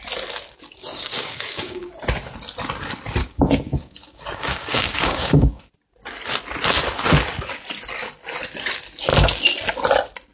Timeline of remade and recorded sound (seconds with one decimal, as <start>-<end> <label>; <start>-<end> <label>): 0.0-0.8 recorded; 0.8-1.9 remade; 1.9-3.2 recorded; 3.2-5.6 remade; 5.6-10.3 recorded